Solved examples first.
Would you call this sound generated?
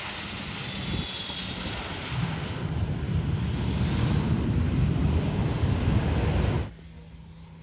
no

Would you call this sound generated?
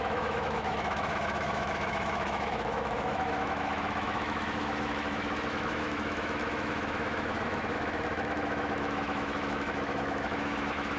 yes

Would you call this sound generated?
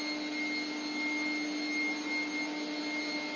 no